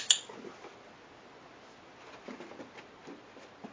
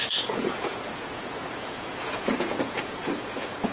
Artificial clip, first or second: second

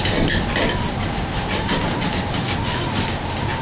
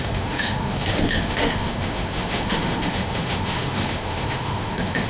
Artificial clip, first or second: second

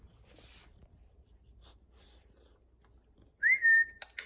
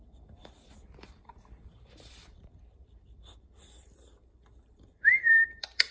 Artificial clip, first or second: second